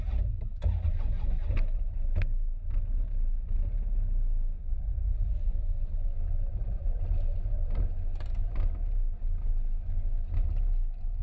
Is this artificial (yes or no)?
no